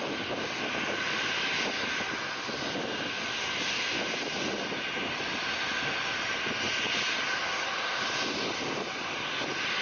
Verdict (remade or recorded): recorded